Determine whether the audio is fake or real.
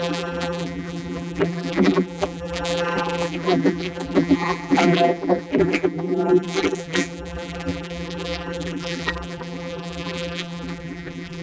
fake